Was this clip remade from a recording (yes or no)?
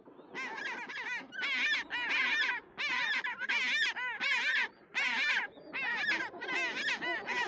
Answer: no